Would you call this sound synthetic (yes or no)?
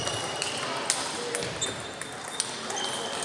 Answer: no